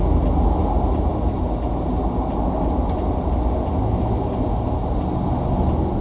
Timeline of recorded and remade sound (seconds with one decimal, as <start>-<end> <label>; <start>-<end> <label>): 0.0-6.0 recorded